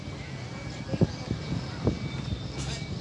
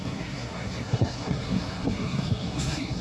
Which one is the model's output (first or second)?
second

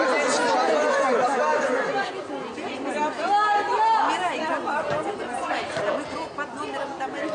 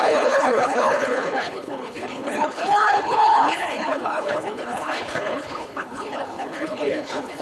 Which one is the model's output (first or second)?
second